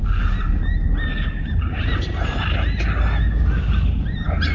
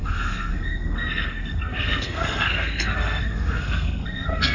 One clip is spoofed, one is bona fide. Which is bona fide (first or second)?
first